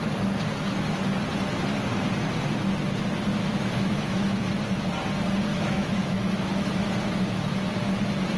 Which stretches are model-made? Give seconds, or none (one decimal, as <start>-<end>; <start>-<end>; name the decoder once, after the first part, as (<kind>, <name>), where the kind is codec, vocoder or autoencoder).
3.3-4.5 (autoencoder, DAC-VAE); 5.5-6.9